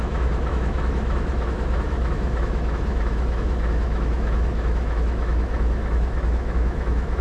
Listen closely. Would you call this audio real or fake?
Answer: fake